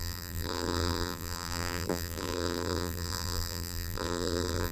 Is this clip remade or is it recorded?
remade